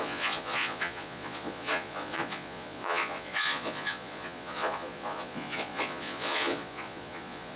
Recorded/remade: remade